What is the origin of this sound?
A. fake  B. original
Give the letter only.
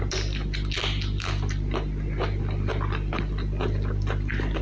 B